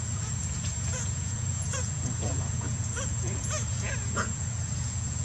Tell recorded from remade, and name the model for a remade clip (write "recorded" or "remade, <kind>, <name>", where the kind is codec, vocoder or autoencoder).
remade, vocoder, Vocos